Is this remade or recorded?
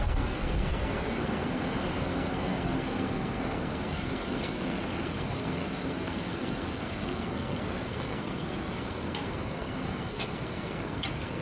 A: remade